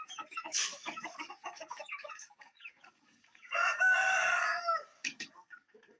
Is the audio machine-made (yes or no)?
yes